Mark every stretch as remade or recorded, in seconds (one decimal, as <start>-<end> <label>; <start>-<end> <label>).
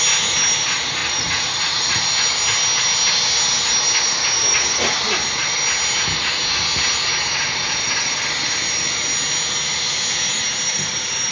0.0-1.0 recorded; 1.0-2.0 remade; 2.0-11.3 recorded